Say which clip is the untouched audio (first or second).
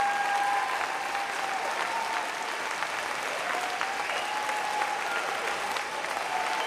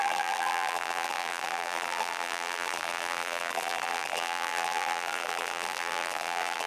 first